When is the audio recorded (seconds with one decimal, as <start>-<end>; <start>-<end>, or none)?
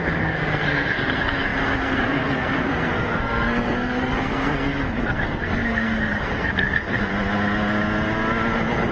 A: 7.1-8.9